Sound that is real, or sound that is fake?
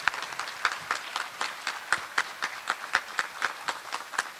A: real